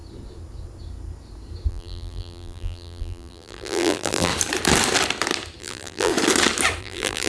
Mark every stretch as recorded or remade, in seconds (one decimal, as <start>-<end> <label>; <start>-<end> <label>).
0.0-1.7 recorded; 1.7-4.3 remade; 4.3-5.6 recorded; 5.6-6.1 remade; 6.1-6.8 recorded; 6.8-7.3 remade